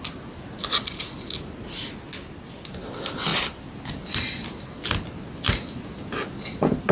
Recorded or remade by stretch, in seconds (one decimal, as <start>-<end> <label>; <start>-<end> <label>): 0.0-6.9 recorded